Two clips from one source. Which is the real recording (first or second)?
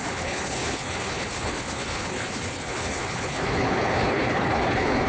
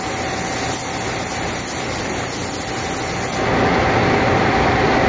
second